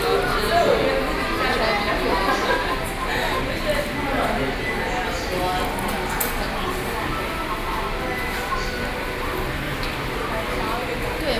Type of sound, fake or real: real